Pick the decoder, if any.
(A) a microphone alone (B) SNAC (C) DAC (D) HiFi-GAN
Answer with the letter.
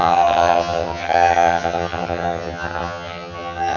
D